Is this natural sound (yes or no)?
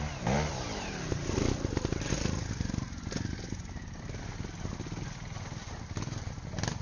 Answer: yes